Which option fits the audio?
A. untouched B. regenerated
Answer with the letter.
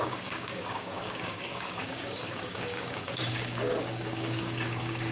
B